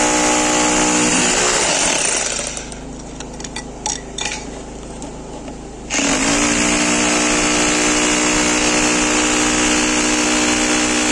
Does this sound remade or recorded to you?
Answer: recorded